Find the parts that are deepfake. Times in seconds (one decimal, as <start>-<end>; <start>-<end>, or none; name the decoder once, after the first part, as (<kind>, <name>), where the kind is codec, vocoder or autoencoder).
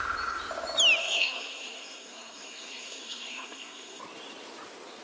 1.0-4.0 (codec, SNAC)